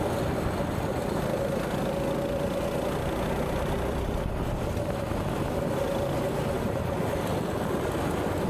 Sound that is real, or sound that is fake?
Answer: real